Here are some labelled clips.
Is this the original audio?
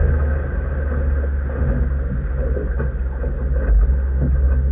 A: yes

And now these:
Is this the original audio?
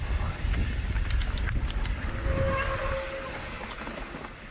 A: yes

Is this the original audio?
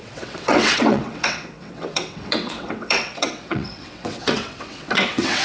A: no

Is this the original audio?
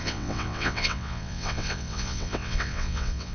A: no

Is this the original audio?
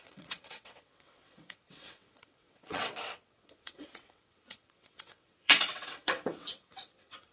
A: no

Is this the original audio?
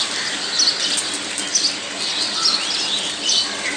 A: yes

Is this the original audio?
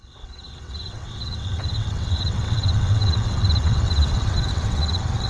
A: no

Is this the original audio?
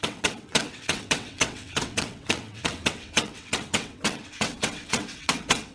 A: no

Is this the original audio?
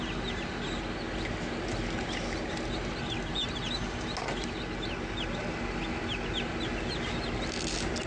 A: yes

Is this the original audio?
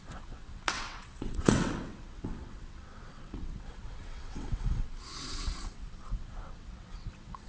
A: no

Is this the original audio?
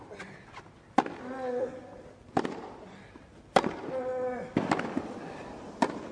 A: yes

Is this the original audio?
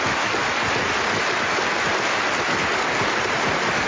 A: yes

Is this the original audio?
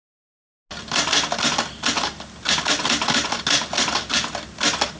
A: yes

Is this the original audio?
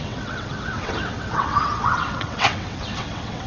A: no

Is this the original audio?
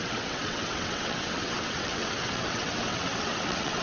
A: no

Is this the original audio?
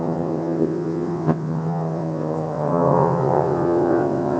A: no